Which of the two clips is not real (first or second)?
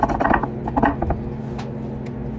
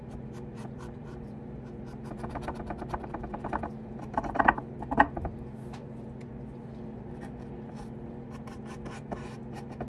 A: second